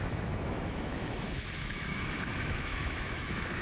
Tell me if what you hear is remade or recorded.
remade